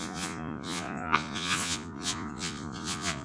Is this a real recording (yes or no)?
no